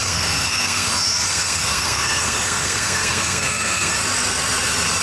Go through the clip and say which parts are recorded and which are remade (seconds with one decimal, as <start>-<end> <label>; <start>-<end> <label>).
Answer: 0.0-0.9 remade; 0.9-1.3 recorded; 1.3-3.9 remade; 3.9-5.0 recorded

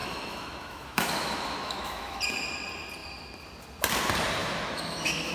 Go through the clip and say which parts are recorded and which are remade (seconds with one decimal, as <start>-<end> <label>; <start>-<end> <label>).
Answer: 0.0-2.2 remade; 2.2-4.4 recorded; 4.4-5.3 remade

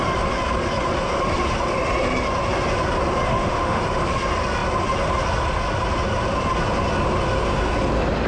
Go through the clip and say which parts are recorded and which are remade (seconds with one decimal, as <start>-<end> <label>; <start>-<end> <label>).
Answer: 0.0-3.3 recorded; 3.3-3.8 remade; 3.8-8.3 recorded